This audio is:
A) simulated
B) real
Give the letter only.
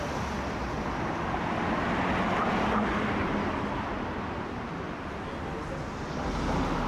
B